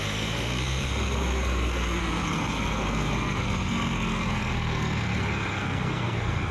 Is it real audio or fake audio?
fake